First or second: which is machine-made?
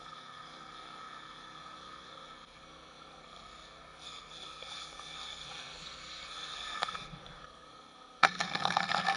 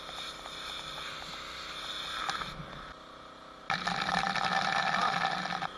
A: first